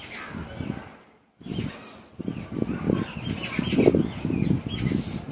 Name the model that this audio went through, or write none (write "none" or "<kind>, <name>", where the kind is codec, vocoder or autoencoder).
none